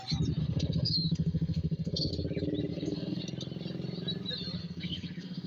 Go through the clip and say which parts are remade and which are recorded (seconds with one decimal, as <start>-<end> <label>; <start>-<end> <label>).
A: 0.0-0.4 recorded; 0.4-2.1 remade; 2.1-2.7 recorded; 2.7-3.2 remade; 3.2-4.6 recorded; 4.6-5.5 remade